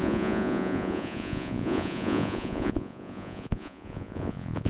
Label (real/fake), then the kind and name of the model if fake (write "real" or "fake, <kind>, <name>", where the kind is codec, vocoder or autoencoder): fake, vocoder, Vocos